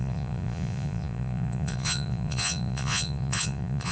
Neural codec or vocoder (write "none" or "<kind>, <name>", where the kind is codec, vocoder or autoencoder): vocoder, Vocos